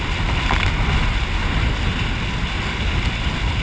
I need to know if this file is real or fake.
real